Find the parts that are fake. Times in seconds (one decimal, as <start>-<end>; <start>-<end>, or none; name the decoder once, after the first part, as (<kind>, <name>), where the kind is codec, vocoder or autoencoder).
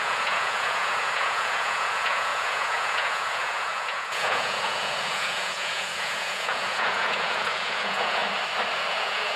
0.0-8.2 (vocoder, Vocos); 8.9-9.4